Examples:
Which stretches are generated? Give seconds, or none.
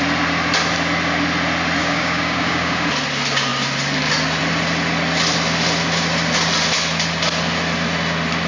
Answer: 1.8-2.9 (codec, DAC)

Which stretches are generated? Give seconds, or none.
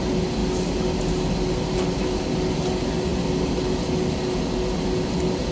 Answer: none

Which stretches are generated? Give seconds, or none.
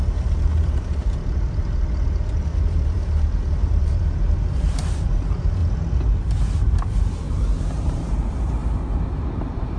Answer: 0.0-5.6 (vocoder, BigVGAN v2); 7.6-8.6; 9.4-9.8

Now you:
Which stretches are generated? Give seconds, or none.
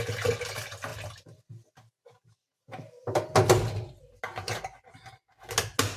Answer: none